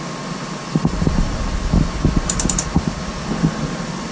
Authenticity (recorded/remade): recorded